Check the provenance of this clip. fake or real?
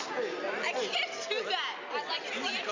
real